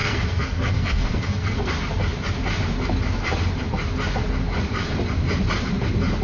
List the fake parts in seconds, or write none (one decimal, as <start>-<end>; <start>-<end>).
0.0-1.7